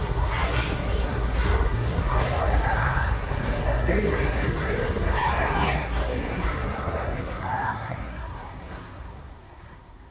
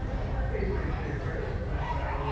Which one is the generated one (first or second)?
first